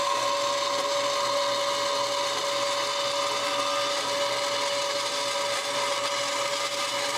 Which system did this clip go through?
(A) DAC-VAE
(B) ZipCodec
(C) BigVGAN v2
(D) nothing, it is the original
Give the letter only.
D